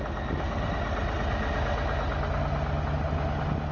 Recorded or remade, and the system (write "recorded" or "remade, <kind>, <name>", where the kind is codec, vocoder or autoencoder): recorded